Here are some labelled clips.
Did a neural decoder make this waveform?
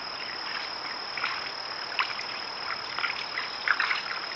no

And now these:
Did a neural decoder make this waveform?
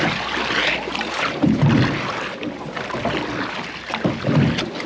no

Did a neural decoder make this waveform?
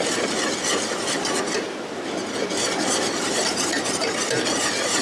no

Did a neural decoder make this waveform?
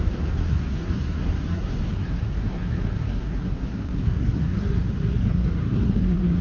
yes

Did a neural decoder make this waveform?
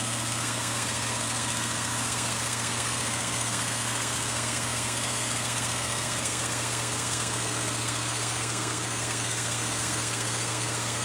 yes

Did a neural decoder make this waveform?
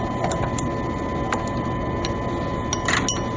no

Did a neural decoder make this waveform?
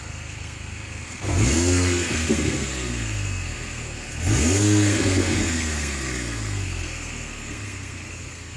yes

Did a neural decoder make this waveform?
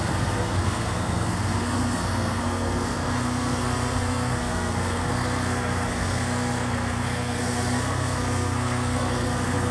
yes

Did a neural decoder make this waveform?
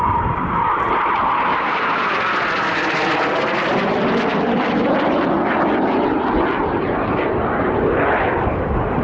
no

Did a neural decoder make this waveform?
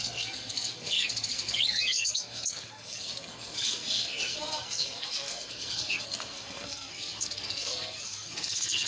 yes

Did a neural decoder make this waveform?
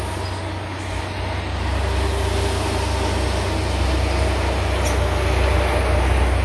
no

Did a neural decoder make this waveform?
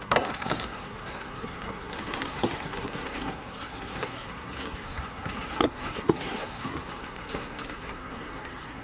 yes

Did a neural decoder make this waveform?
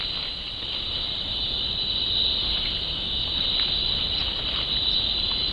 no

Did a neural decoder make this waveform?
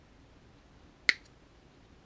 no